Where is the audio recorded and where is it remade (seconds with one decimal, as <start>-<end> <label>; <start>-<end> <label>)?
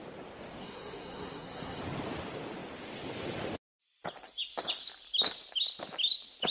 0.0-0.6 recorded; 0.6-1.8 remade; 1.8-6.5 recorded